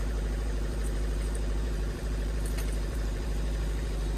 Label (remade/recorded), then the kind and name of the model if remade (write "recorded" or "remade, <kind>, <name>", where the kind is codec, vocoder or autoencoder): remade, vocoder, BigVGAN v2